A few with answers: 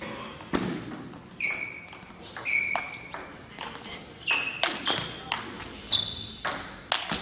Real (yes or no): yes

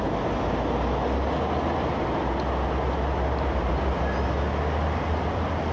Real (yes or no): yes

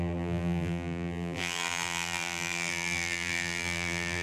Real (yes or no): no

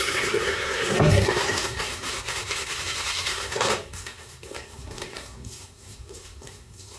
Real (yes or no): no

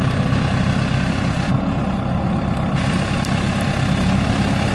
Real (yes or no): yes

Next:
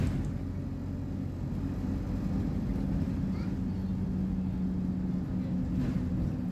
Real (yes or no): yes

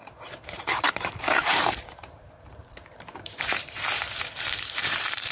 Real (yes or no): no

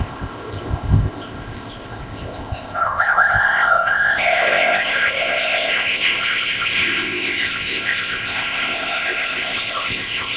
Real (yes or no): no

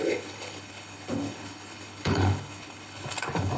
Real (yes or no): no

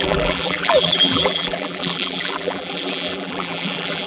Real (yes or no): no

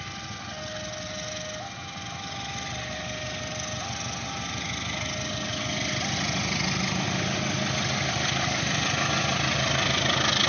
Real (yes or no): yes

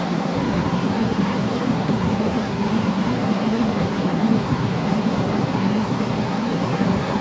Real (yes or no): no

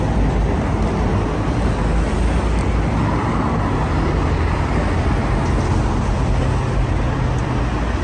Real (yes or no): yes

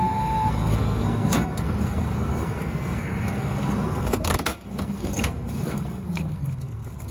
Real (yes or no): no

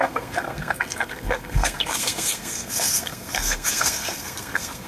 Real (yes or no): no